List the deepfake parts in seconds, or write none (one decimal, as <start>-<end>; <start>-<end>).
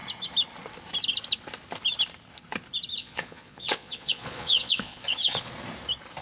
3.0-5.5